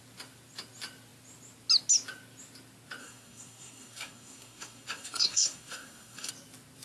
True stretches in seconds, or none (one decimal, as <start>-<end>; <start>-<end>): 0.0-3.0; 6.3-6.8